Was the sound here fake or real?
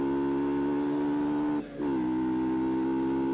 real